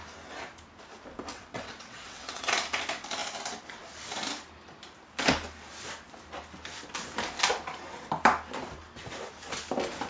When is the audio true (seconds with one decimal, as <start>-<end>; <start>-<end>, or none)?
0.0-1.3; 2.5-10.1